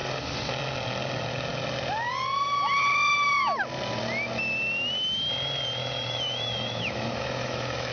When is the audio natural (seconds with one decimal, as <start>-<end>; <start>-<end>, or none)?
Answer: 0.0-5.8